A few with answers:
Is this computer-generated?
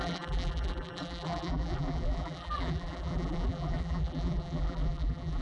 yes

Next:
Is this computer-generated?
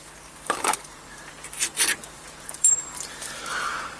yes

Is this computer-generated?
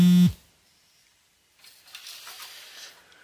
no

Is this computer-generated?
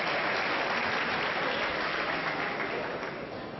no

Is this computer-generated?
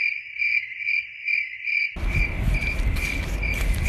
no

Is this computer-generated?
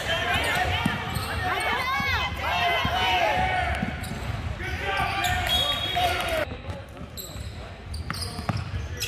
no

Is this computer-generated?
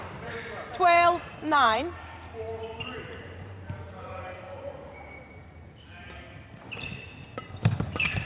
yes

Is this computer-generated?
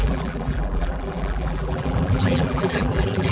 yes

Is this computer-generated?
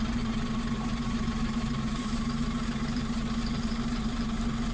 yes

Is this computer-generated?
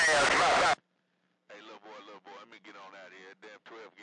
no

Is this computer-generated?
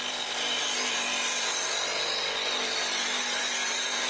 yes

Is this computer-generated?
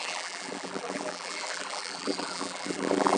yes